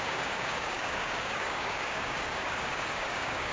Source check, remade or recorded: remade